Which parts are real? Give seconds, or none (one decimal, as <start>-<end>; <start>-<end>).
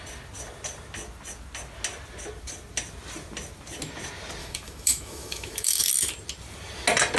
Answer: 0.0-4.4; 5.9-7.2